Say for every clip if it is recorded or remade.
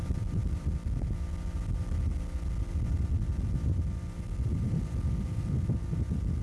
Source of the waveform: recorded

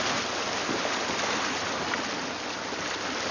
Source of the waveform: recorded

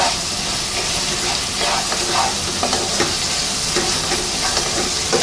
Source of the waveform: recorded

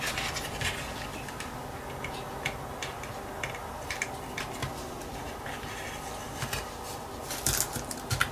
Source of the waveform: recorded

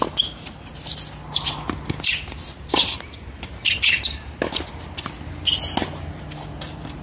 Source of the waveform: recorded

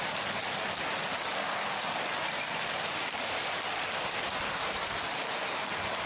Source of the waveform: recorded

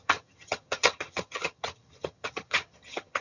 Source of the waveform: remade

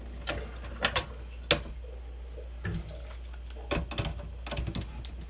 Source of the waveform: recorded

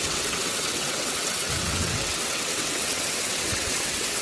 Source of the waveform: remade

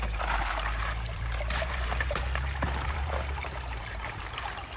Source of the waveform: remade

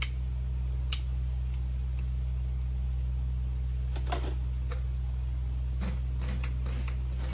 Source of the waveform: recorded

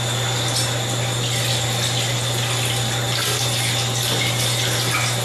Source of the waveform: recorded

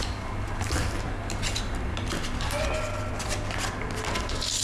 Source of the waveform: recorded